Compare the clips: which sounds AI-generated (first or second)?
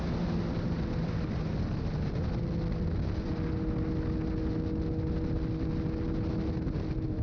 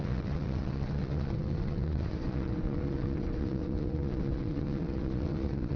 second